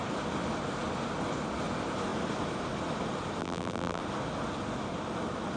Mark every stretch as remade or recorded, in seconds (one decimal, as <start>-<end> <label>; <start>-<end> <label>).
0.0-3.4 recorded; 3.4-4.0 remade; 4.0-5.6 recorded